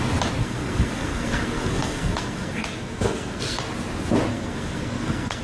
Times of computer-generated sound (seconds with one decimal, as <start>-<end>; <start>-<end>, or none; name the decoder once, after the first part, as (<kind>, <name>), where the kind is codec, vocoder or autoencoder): 0.4-3.6 (codec, SNAC); 4.3-5.4